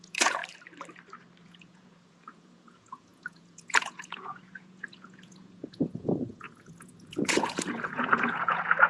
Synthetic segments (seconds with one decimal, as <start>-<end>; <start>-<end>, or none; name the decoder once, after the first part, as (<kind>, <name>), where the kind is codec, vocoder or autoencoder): 0.0-0.4 (vocoder, Vocos); 1.4-8.9